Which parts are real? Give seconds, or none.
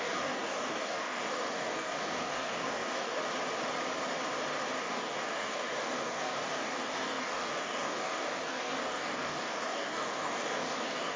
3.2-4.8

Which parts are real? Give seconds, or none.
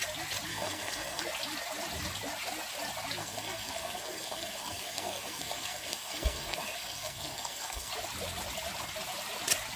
0.0-0.5; 1.2-3.2; 7.9-9.8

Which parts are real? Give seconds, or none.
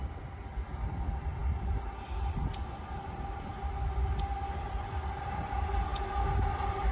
0.0-6.9